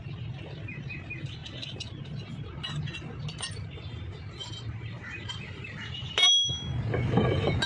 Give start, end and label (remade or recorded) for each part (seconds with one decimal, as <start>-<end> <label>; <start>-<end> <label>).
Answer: 0.0-7.7 recorded